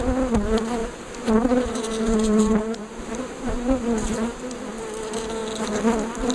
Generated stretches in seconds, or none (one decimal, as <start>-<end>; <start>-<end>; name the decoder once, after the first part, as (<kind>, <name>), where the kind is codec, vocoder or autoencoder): 0.8-3.8 (vocoder, BigVGAN v2)